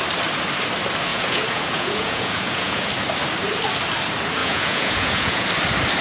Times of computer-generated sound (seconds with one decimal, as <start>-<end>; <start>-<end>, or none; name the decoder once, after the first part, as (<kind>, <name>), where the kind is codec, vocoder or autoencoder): 1.1-2.9 (vocoder, Vocos); 4.4-5.5